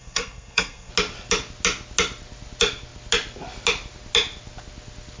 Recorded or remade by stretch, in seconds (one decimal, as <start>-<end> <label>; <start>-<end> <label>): 0.0-0.9 remade; 0.9-5.2 recorded